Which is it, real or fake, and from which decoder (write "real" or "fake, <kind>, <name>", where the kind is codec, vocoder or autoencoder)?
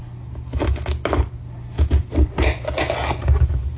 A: real